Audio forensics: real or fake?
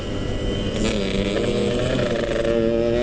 real